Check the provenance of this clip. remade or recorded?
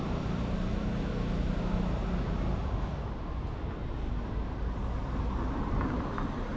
recorded